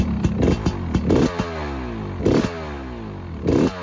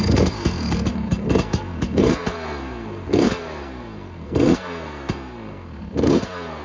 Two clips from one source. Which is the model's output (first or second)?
second